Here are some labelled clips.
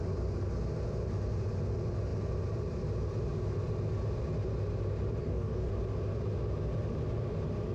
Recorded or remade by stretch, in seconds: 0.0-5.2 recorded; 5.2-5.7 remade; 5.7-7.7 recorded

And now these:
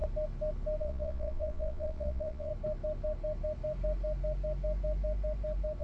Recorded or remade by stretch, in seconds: 0.0-0.8 recorded; 0.8-2.5 remade; 2.5-5.8 recorded

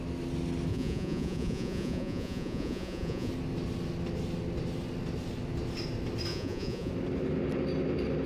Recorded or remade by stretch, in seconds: 0.0-0.7 recorded; 0.7-3.3 remade; 3.3-6.3 recorded; 6.3-6.9 remade; 6.9-8.3 recorded